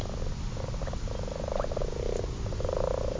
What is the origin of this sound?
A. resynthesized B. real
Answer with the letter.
B